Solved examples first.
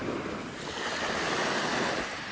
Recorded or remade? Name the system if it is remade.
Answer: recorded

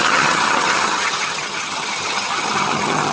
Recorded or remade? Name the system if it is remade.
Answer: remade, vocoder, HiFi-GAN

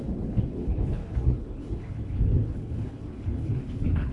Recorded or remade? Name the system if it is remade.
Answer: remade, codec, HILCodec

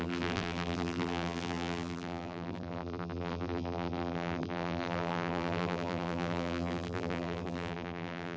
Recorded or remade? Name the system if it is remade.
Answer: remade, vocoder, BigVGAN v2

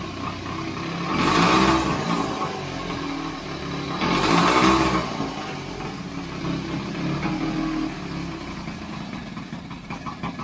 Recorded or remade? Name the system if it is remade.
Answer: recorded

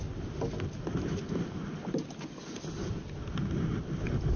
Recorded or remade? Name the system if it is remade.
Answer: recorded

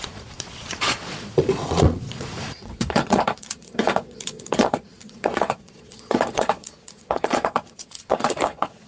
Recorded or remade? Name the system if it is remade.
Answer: remade, vocoder, Vocos